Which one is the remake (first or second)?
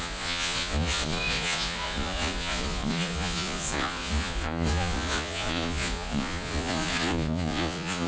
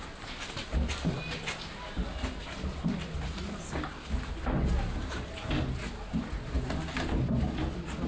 first